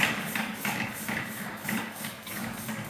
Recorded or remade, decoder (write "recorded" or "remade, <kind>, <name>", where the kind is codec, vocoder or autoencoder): remade, codec, DAC